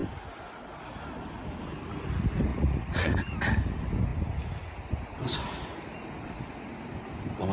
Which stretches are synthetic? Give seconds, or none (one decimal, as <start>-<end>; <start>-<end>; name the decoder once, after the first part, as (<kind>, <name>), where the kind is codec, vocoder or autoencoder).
2.5-3.5 (vocoder, Vocos)